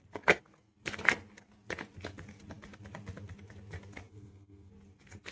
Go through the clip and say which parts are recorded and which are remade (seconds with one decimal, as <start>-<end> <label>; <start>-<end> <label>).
0.0-4.1 recorded; 4.1-4.7 remade; 4.7-5.3 recorded